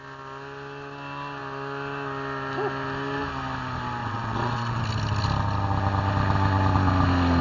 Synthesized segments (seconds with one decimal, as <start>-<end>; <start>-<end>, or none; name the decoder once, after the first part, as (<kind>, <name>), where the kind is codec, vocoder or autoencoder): 4.0-4.8 (vocoder, WaveNeXt)

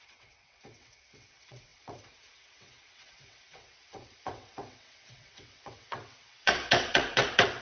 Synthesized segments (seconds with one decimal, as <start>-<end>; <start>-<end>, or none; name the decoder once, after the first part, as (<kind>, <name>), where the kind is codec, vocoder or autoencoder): 0.0-7.6 (vocoder, WaveNeXt)

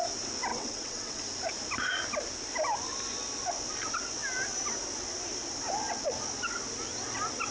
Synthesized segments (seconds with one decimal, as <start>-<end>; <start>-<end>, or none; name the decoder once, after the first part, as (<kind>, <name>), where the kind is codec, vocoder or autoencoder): 0.5-1.2 (vocoder, WaveNeXt)

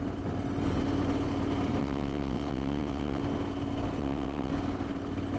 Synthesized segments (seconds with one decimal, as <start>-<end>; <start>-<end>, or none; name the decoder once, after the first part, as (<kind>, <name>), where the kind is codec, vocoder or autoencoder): 1.8-3.2 (vocoder, WaveNeXt); 4.0-4.5

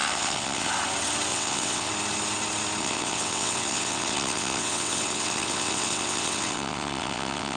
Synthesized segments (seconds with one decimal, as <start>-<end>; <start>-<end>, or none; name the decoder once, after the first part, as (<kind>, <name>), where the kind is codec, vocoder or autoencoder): 0.0-0.7 (vocoder, WaveNeXt); 1.3-1.9; 2.8-7.6

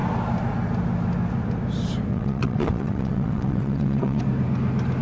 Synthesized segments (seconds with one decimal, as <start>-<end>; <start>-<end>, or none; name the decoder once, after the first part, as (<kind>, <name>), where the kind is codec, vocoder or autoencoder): 2.1-4.2 (vocoder, WaveNeXt)